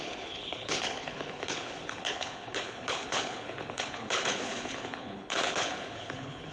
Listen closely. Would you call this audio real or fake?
fake